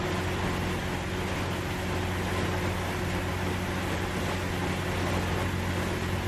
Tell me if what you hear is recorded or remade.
recorded